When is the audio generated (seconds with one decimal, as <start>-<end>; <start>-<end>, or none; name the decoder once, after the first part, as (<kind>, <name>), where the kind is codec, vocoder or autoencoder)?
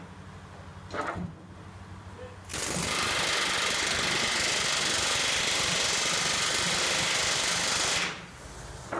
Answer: none